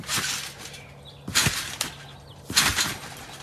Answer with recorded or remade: recorded